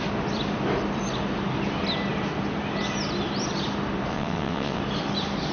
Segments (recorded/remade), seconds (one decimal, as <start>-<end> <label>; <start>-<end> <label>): 0.0-4.1 recorded; 4.1-4.8 remade; 4.8-5.5 recorded